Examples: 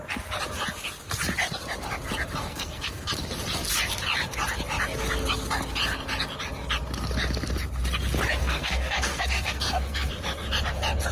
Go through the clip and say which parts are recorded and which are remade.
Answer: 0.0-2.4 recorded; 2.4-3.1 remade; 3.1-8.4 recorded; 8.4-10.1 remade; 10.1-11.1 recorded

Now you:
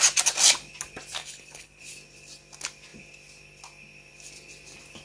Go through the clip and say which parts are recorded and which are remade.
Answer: 0.0-1.2 recorded; 1.2-1.8 remade; 1.8-5.0 recorded